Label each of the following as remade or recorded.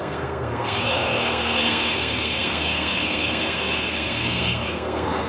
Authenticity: remade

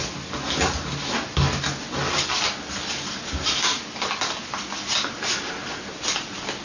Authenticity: recorded